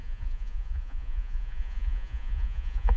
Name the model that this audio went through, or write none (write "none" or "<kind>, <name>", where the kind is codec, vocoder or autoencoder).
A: vocoder, Vocos